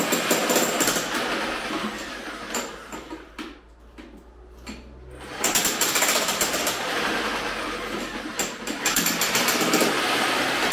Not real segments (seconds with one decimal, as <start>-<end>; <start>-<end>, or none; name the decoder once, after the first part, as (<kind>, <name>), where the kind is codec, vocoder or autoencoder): none